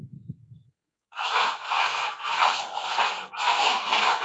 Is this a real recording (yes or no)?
no